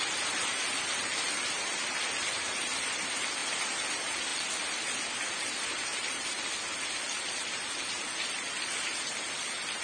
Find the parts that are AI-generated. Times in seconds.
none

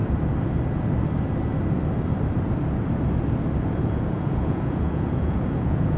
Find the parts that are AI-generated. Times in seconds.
3.6-6.0 (vocoder, Vocos)

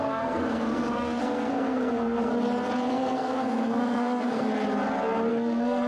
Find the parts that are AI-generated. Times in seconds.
0.0-2.3 (codec, SNAC); 2.9-4.5; 5.3-5.9